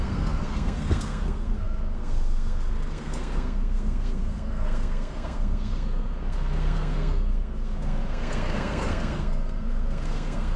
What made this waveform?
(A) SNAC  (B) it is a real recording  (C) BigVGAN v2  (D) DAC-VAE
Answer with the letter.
A